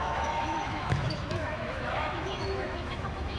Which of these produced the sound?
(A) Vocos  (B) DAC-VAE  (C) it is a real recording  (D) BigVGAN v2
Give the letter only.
B